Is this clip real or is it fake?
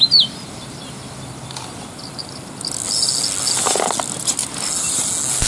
real